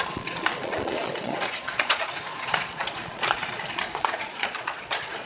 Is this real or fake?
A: fake